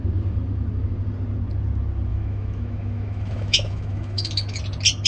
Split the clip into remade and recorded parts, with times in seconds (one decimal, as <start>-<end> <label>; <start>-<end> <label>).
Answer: 0.0-2.1 recorded; 2.1-4.6 remade; 4.6-5.1 recorded